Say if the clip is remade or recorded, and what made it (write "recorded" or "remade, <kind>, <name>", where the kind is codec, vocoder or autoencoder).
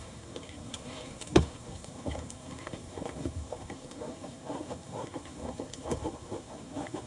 remade, codec, SNAC